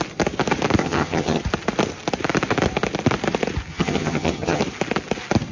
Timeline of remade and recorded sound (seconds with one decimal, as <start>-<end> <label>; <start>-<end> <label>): 0.0-0.8 recorded; 0.8-1.4 remade; 1.4-3.7 recorded; 3.7-4.6 remade; 4.6-5.5 recorded